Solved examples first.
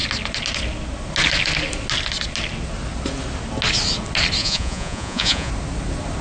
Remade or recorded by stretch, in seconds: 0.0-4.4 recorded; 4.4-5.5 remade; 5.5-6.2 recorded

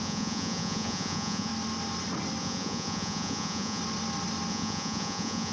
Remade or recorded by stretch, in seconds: 0.0-1.5 remade; 1.5-2.4 recorded; 2.4-3.8 remade; 3.8-4.5 recorded; 4.5-5.5 remade

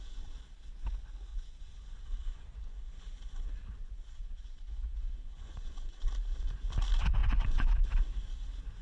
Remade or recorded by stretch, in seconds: 0.0-1.3 recorded; 1.3-2.9 remade; 2.9-3.8 recorded; 3.8-6.1 remade; 6.1-7.2 recorded; 7.2-7.7 remade; 7.7-8.8 recorded